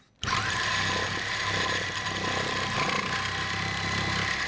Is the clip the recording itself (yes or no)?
yes